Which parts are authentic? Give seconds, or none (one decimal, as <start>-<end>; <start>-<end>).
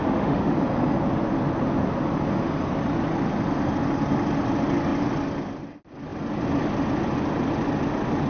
0.6-8.3